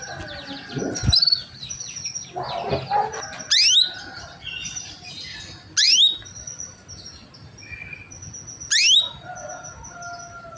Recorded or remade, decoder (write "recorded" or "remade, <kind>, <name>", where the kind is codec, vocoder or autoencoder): recorded